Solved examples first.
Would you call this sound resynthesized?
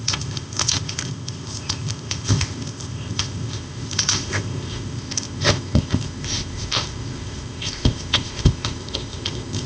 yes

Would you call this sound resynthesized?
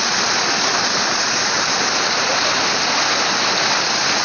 no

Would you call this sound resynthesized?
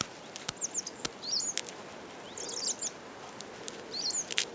no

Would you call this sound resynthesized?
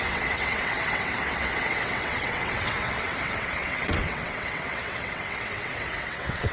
yes